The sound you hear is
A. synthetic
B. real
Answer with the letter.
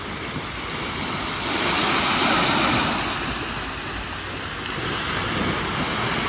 B